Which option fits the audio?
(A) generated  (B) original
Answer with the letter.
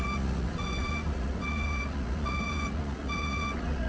A